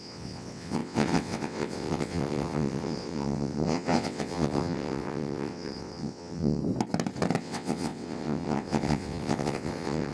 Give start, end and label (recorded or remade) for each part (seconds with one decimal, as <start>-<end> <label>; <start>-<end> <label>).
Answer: 0.0-6.6 remade; 6.6-7.4 recorded; 7.4-10.1 remade